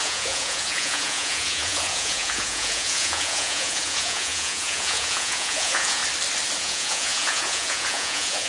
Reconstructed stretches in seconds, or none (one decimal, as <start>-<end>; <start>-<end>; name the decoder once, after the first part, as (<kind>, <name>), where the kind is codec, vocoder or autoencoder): 0.0-6.0 (vocoder, Vocos); 6.6-8.5